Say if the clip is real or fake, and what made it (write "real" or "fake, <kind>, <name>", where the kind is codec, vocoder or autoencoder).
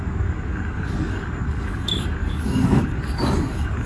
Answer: fake, codec, DAC